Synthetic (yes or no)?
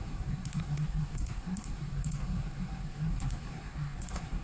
yes